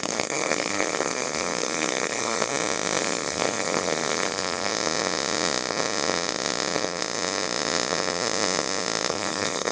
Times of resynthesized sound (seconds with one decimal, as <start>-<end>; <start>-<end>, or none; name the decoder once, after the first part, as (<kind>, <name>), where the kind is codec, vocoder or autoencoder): 0.0-2.5 (codec, SNAC); 3.0-4.7; 9.1-9.7